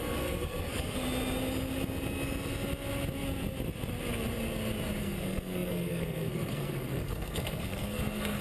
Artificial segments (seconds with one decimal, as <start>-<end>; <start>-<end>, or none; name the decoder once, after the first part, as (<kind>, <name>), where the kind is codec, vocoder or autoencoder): 0.0-1.0 (codec, SNAC); 5.0-8.4